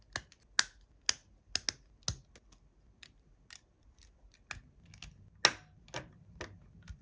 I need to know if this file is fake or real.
real